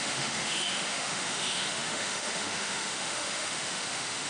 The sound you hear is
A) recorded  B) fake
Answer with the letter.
B